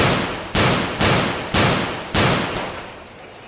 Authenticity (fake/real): real